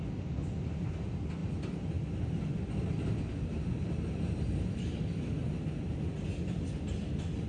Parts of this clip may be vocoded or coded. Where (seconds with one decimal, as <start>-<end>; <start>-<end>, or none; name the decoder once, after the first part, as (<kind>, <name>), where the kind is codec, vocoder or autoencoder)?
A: none